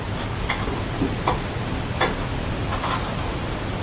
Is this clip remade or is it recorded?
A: recorded